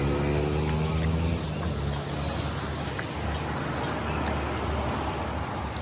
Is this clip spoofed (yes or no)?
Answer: no